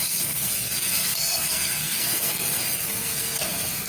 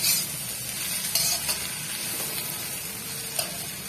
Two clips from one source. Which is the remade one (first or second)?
first